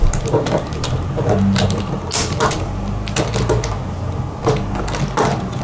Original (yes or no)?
yes